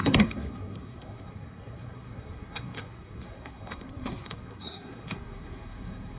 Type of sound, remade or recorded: remade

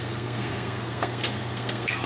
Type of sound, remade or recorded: remade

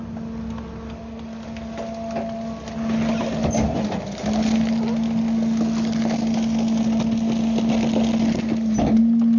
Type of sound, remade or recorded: recorded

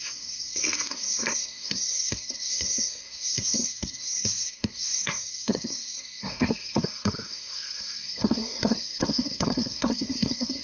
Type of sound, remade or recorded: remade